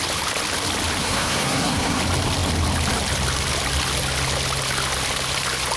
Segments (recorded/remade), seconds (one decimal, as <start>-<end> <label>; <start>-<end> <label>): 0.0-1.0 recorded; 1.0-2.0 remade; 2.0-5.8 recorded